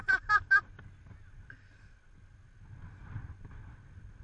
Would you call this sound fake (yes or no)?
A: no